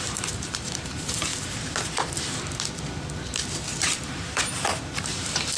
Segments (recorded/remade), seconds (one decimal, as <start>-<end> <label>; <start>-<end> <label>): 0.0-1.3 remade; 1.3-3.6 recorded; 3.6-5.6 remade

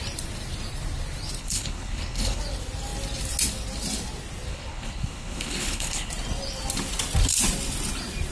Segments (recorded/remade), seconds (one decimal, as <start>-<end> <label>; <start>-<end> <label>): 0.0-1.4 recorded; 1.4-2.4 remade; 2.4-4.5 recorded; 4.5-6.1 remade; 6.1-8.3 recorded

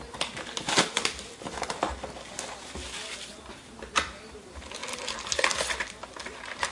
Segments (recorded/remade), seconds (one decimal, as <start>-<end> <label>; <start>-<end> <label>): 0.0-6.7 recorded

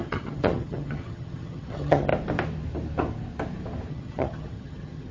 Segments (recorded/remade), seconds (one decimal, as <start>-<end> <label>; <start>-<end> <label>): 0.0-2.1 remade; 2.1-3.9 recorded; 3.9-5.1 remade

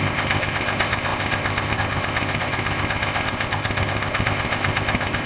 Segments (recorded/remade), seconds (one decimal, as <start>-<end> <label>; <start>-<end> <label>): 0.0-5.3 remade

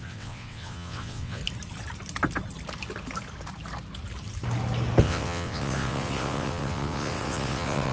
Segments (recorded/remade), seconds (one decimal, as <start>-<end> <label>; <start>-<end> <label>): 0.0-1.4 remade; 1.4-5.0 recorded; 5.0-7.9 remade